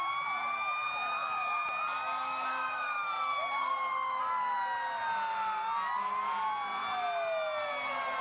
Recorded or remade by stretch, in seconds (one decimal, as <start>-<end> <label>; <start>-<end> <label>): 0.0-2.5 recorded; 2.5-4.2 remade; 4.2-8.2 recorded